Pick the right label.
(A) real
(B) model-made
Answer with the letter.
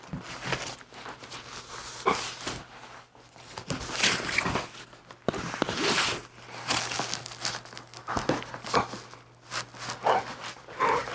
A